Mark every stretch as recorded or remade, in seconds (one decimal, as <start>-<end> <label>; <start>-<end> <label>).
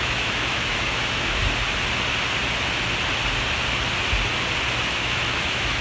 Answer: 0.0-1.4 remade; 1.4-4.9 recorded; 4.9-5.8 remade